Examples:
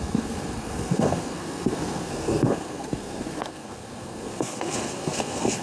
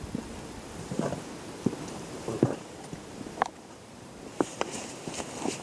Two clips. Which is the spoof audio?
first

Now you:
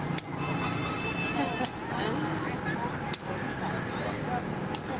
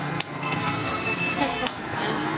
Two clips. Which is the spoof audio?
second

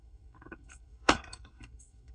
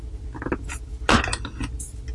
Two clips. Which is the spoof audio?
first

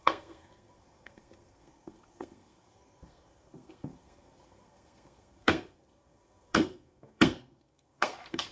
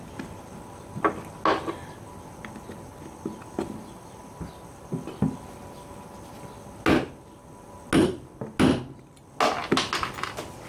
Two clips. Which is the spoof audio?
first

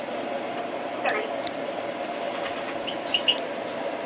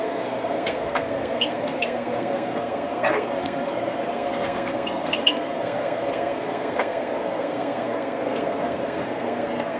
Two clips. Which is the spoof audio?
second